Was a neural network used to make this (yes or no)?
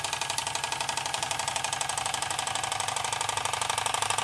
no